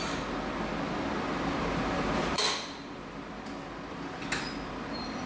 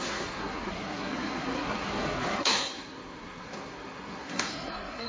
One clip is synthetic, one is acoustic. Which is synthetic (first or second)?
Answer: second